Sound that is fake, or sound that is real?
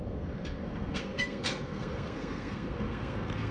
fake